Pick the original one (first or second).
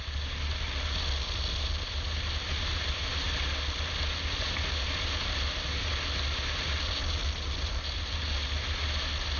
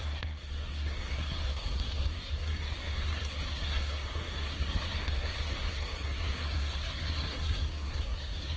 first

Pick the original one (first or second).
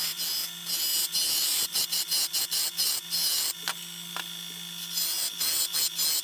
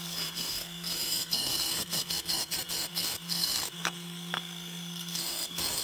first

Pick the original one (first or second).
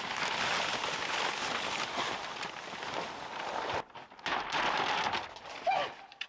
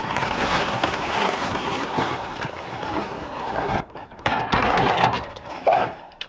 first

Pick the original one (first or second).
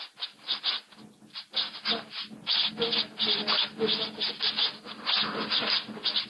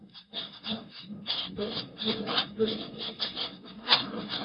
first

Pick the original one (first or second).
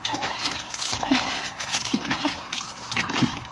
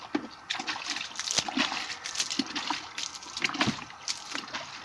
second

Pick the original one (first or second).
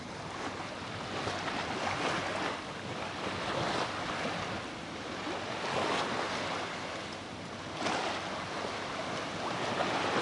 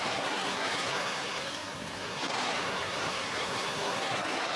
first